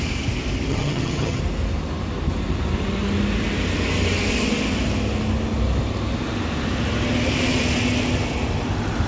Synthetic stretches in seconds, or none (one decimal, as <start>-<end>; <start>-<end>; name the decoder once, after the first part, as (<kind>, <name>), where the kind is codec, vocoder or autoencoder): 0.7-1.4 (vocoder, HiFi-GAN)